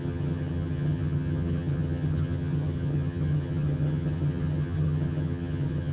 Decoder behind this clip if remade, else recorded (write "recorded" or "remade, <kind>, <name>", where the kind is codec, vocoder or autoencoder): remade, vocoder, HiFi-GAN